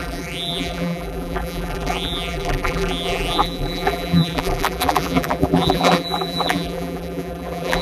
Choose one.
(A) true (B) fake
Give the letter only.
B